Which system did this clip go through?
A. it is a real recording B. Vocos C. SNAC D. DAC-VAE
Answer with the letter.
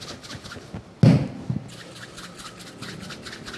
A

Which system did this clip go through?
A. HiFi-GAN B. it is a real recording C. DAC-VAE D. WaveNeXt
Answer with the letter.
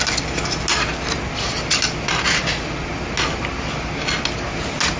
B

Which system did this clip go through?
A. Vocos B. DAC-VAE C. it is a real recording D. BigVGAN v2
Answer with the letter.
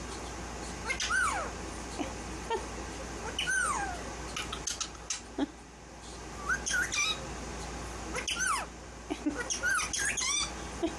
C